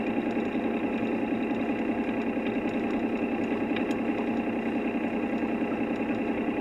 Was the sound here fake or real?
real